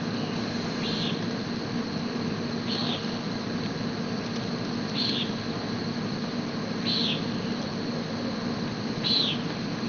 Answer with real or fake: real